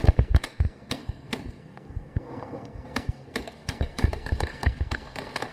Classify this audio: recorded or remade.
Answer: remade